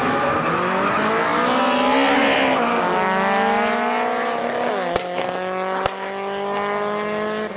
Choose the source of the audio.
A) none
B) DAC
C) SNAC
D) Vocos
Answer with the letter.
A